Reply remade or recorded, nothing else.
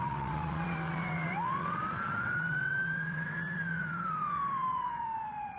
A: remade